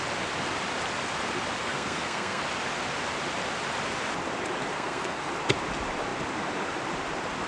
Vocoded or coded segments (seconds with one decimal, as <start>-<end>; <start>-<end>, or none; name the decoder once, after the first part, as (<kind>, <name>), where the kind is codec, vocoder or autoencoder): 1.6-2.4 (codec, SNAC); 4.7-5.3